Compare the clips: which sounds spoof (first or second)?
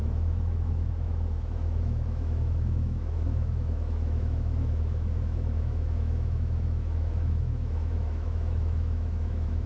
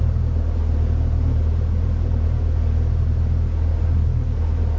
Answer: first